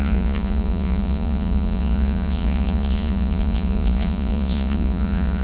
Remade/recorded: remade